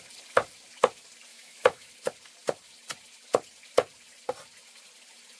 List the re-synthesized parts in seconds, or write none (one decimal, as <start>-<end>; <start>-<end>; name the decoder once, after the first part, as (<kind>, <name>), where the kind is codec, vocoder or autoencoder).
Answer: 1.3-1.9 (autoencoder, DAC-VAE)